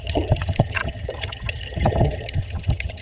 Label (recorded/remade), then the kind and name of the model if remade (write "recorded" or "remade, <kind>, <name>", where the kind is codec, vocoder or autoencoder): remade, vocoder, HiFi-GAN